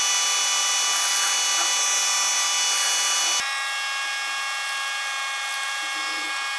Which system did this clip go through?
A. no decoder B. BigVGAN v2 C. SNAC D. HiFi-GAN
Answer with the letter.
A